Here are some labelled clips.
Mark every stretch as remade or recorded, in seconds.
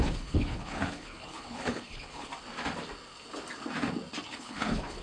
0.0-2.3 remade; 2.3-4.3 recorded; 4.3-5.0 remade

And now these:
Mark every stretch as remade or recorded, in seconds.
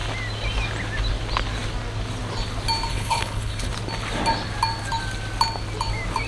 0.0-2.9 recorded; 2.9-3.7 remade; 3.7-6.3 recorded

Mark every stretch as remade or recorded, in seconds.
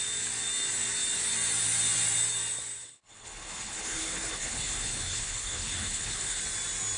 0.0-2.8 recorded; 2.8-6.4 remade; 6.4-7.0 recorded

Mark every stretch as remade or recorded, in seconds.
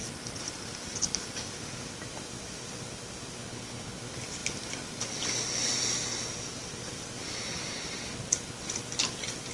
0.0-3.4 recorded; 3.4-3.9 remade; 3.9-9.5 recorded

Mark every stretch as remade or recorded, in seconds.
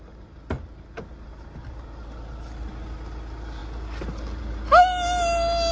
0.0-5.7 recorded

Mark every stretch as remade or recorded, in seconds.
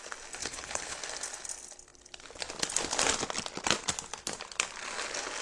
0.0-0.4 recorded; 0.4-1.0 remade; 1.0-5.4 recorded